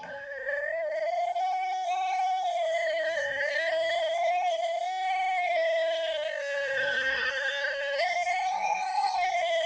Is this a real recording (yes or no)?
no